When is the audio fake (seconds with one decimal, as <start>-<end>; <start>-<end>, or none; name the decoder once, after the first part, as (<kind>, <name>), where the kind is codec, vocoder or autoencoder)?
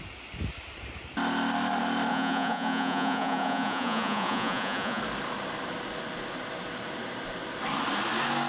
2.1-5.0 (vocoder, Vocos)